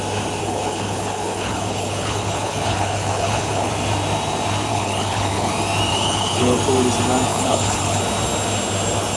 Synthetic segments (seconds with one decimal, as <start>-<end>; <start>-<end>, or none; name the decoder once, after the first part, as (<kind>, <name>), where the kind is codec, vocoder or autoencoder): 0.4-3.7 (codec, HILCodec); 4.7-5.5; 5.9-6.6; 7.3-8.0

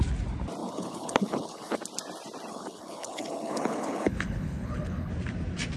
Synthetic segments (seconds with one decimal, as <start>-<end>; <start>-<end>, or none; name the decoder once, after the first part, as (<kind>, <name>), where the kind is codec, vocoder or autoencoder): 0.6-1.8 (codec, HILCodec); 2.5-5.1

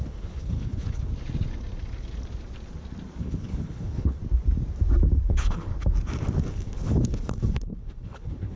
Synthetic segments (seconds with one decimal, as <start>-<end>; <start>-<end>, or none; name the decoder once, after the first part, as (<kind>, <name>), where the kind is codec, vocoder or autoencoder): 0.0-1.1 (codec, HILCodec); 3.2-4.2; 5.3-5.7; 6.5-8.6

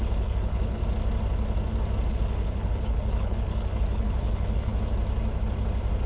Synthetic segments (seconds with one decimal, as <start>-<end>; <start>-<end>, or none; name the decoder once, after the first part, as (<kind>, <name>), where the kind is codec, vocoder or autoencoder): 0.0-0.8 (codec, HILCodec); 2.1-4.7

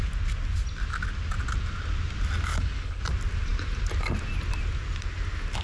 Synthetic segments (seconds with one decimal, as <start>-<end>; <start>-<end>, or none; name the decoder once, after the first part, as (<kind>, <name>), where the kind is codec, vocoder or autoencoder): 2.5-3.0 (codec, HILCodec)

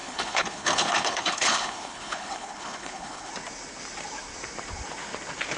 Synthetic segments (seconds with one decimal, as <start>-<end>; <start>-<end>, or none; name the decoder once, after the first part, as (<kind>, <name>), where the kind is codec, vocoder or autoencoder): 0.0-3.3 (codec, HILCodec)

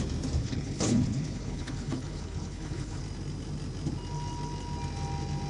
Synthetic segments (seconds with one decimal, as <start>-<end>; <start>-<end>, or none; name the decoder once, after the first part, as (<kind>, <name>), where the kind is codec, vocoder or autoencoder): 0.4-3.0 (codec, HILCodec)